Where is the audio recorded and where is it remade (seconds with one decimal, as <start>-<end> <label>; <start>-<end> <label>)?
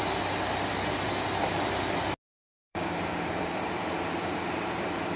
0.0-2.5 recorded; 2.5-3.5 remade; 3.5-5.2 recorded